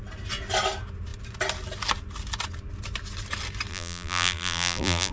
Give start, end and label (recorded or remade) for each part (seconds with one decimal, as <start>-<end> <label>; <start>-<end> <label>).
0.0-3.7 recorded; 3.7-5.1 remade